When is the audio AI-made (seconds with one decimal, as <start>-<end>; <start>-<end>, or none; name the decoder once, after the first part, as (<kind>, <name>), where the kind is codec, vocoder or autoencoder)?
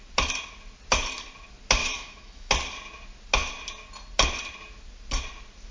1.8-2.5 (autoencoder, DAC-VAE)